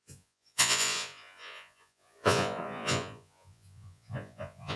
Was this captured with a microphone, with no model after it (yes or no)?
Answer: no